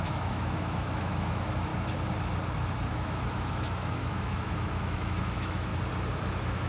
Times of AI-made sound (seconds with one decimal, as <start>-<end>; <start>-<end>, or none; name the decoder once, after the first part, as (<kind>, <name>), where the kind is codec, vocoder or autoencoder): 0.0-1.7 (autoencoder, DAC-VAE); 2.9-5.7; 6.2-6.7